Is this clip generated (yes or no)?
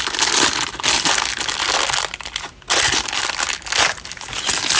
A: no